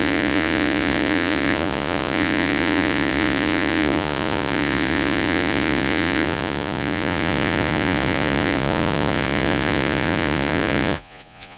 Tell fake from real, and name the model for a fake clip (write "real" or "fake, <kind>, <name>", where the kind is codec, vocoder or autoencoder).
fake, vocoder, Vocos